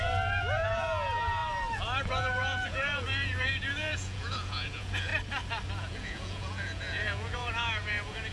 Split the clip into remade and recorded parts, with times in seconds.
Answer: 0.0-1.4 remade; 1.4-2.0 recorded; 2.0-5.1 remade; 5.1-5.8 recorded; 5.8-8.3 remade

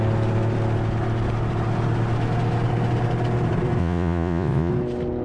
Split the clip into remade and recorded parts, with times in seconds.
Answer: 0.0-3.8 recorded; 3.8-4.7 remade; 4.7-5.2 recorded

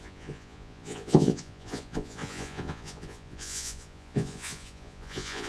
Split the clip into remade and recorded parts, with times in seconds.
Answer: 0.0-5.5 remade

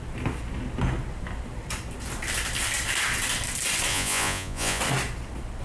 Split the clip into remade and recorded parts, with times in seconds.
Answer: 0.0-3.9 recorded; 3.9-4.8 remade; 4.8-5.6 recorded

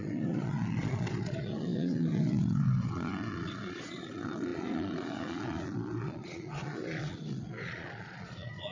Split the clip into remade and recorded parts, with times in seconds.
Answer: 0.0-8.7 remade

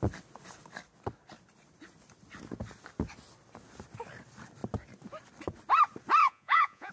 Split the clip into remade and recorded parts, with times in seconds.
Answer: 0.0-6.2 recorded; 6.2-6.9 remade

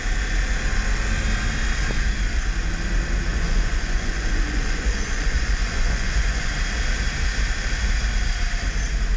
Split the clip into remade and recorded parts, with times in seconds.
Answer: 0.0-3.3 recorded; 3.3-6.5 remade; 6.5-9.2 recorded